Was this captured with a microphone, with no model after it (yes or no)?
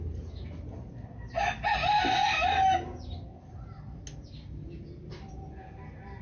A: yes